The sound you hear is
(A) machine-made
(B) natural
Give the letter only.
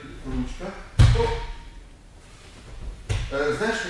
B